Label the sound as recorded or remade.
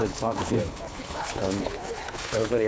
remade